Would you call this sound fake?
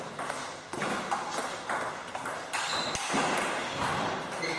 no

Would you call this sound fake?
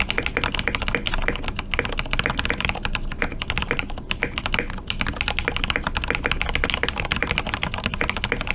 no